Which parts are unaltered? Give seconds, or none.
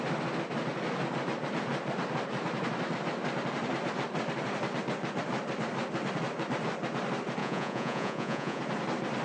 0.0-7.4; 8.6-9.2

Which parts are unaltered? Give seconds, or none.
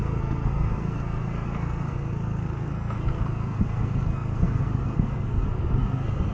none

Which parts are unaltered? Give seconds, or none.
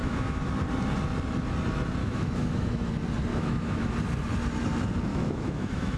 0.5-2.0; 2.9-3.3; 3.9-5.1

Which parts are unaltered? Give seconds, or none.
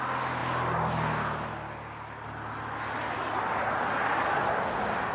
0.0-5.1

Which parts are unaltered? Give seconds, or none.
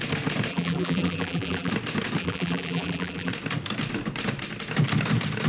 0.0-0.5; 1.7-2.2; 3.3-5.5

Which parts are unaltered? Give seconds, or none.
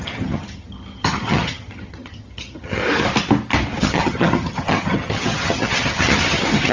2.8-3.8